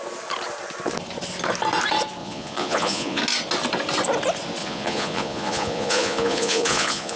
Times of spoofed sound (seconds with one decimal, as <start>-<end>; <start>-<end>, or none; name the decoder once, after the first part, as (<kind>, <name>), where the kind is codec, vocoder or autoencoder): 2.2-3.2 (vocoder, Vocos); 4.6-7.2